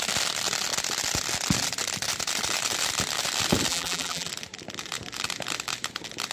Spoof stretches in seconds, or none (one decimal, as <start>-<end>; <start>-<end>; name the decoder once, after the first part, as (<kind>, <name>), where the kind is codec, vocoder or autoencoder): 3.7-4.3 (vocoder, BigVGAN v2)